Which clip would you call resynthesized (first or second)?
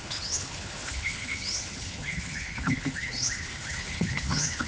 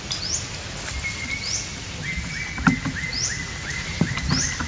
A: first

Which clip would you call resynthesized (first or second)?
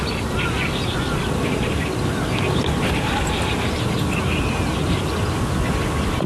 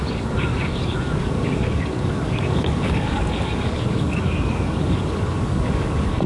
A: second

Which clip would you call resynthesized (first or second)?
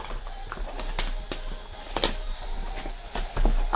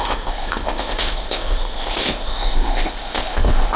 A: second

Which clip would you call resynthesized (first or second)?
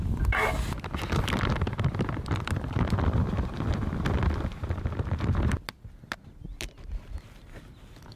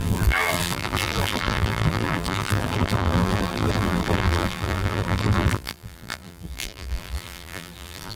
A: second